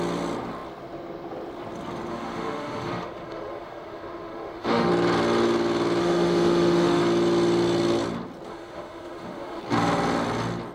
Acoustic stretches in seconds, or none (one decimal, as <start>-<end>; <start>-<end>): 0.0-2.1; 4.9-6.0; 7.0-8.5; 9.6-10.7